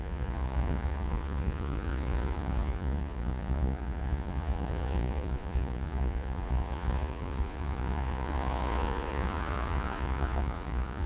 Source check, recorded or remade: remade